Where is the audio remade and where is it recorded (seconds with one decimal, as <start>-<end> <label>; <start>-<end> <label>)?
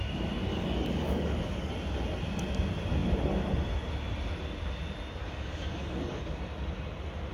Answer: 0.0-0.5 recorded; 0.5-1.7 remade; 1.7-5.2 recorded; 5.2-6.2 remade; 6.2-7.3 recorded